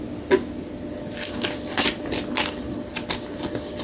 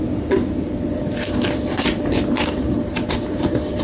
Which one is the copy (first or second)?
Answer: second